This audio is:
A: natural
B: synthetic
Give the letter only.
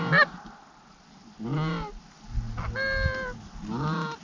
A